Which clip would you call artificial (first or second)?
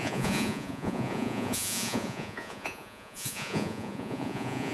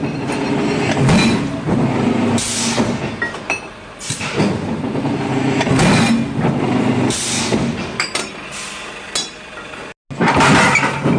first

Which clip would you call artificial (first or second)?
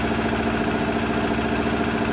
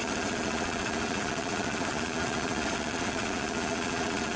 second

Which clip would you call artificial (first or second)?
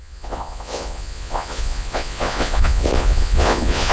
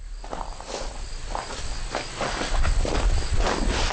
first